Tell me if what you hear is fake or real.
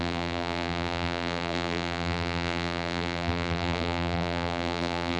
fake